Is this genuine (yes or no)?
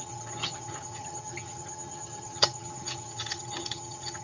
no